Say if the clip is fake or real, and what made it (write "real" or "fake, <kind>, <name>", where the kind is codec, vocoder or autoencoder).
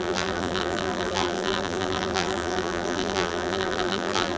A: fake, vocoder, BigVGAN v2